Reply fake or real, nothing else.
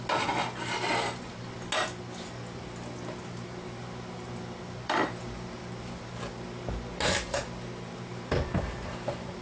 real